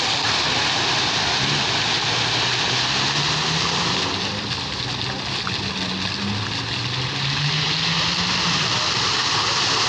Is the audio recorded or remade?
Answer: recorded